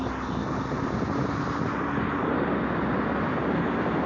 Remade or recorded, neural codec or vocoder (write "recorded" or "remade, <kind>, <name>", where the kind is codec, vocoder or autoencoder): recorded